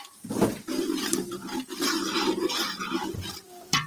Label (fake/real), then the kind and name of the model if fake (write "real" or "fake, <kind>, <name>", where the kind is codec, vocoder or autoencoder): fake, vocoder, BigVGAN v2